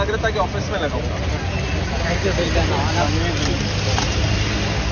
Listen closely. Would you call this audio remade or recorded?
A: recorded